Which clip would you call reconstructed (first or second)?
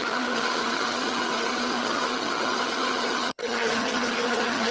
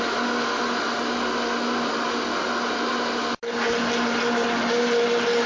first